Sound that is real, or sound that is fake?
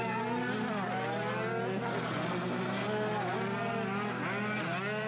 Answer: real